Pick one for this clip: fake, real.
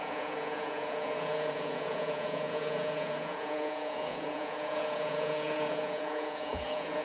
fake